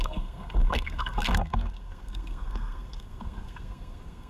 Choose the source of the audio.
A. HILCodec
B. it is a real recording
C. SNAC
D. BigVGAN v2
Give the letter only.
C